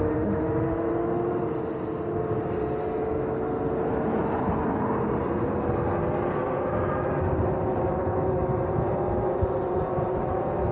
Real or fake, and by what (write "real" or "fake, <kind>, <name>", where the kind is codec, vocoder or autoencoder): real